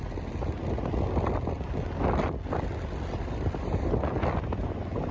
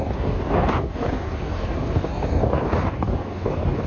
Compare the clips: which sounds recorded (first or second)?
first